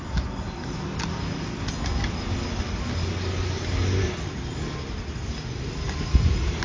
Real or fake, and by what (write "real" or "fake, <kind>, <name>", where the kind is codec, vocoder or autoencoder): real